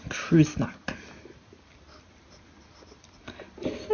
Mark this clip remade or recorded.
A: recorded